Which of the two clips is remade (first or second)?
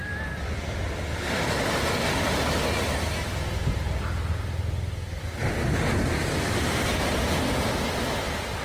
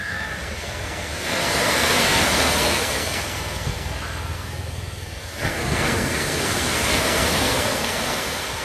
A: second